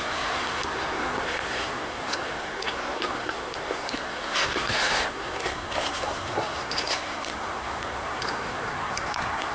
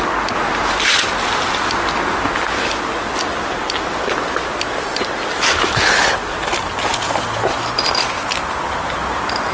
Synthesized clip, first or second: first